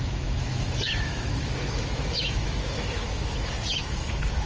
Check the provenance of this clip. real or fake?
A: fake